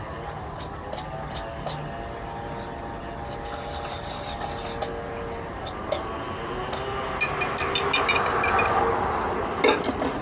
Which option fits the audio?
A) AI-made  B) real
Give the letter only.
B